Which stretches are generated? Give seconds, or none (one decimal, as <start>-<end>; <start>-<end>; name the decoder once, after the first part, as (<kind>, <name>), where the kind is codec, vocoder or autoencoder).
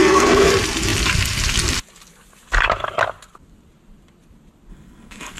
0.0-0.5 (codec, SNAC); 4.7-5.4